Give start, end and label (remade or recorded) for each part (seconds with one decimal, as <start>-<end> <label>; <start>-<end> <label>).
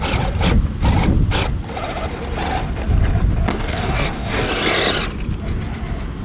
0.0-3.5 recorded; 3.5-4.5 remade; 4.5-6.2 recorded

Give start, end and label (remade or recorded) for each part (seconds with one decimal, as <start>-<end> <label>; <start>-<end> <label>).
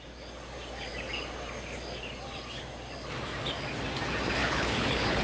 0.0-4.4 recorded; 4.4-5.2 remade